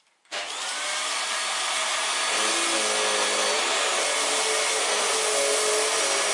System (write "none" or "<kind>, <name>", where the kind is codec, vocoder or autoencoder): none